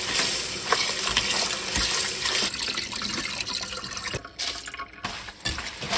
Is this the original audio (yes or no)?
yes